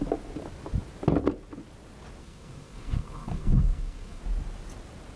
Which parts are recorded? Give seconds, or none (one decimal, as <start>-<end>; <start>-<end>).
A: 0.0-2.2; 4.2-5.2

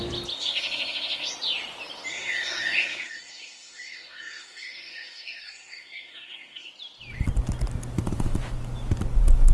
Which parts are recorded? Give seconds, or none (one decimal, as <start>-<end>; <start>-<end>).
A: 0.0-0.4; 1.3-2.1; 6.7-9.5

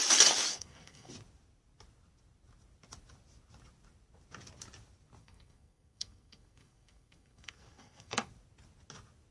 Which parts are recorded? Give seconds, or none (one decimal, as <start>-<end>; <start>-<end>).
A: 0.0-0.5; 1.1-5.2; 8.3-9.3

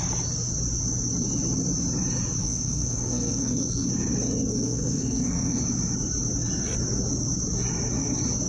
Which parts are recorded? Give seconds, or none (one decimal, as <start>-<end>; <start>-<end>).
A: 0.0-2.4; 3.9-4.5; 5.6-8.5

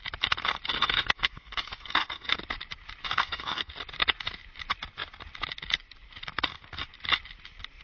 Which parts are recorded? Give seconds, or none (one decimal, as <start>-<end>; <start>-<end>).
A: 0.0-0.7; 2.4-3.0; 3.7-7.8

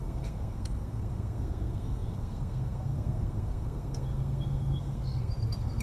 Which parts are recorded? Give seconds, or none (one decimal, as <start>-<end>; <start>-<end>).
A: none

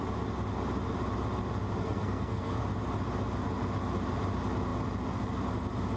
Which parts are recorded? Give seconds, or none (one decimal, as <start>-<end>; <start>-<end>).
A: 0.0-1.8; 2.6-6.0